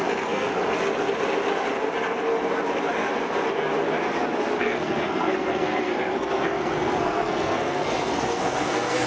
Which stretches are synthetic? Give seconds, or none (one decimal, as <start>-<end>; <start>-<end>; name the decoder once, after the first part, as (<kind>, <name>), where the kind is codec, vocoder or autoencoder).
0.0-0.5 (codec, SNAC); 4.6-9.1